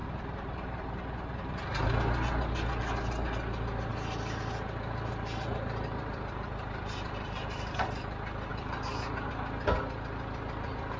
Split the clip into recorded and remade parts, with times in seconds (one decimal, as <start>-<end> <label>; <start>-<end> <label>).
0.0-1.9 remade; 1.9-3.9 recorded; 3.9-7.8 remade; 7.8-8.5 recorded; 8.5-9.3 remade; 9.3-11.0 recorded